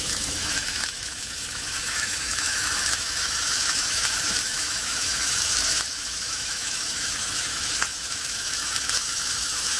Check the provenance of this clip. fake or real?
fake